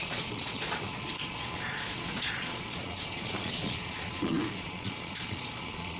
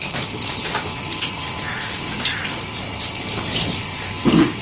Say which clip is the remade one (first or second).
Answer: first